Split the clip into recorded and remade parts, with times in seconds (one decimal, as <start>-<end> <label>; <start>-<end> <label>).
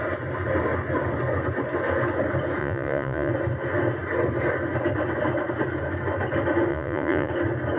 0.0-2.6 recorded; 2.6-3.3 remade; 3.3-6.7 recorded; 6.7-7.3 remade; 7.3-7.8 recorded